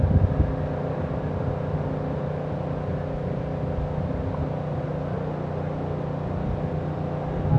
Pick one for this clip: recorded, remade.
recorded